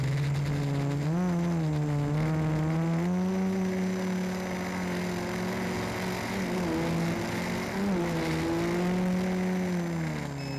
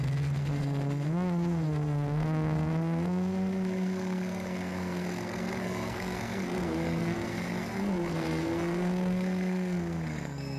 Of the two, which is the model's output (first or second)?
second